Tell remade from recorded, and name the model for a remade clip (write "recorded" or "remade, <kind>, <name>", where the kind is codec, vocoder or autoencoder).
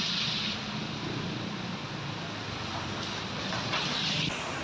recorded